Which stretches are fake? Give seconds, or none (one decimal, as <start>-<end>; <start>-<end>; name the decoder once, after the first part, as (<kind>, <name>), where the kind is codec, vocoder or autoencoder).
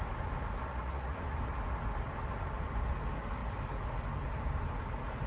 0.7-1.4 (vocoder, Vocos)